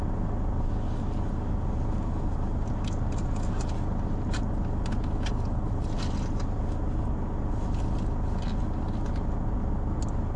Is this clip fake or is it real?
real